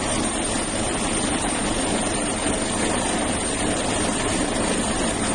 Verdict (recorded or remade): recorded